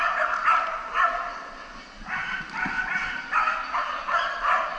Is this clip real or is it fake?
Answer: real